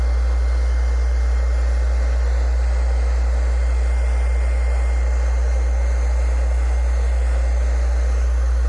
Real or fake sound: real